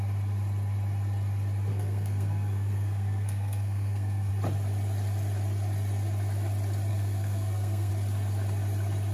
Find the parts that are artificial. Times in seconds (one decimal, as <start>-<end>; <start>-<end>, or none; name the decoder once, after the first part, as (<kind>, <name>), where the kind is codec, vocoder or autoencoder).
1.7-4.3 (codec, SNAC); 6.9-7.9